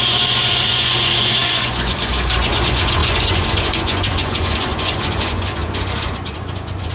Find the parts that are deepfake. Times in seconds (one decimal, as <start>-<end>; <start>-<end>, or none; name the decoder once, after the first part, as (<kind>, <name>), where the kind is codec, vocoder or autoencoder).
0.0-6.9 (vocoder, Vocos)